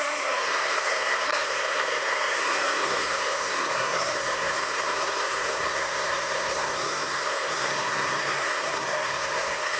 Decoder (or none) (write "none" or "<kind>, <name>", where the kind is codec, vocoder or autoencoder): codec, SNAC